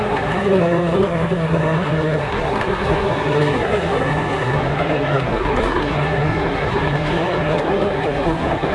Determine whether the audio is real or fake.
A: fake